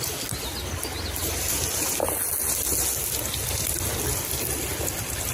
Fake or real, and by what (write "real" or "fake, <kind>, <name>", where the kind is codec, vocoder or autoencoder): real